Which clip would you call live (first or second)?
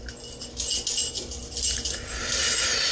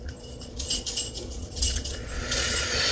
first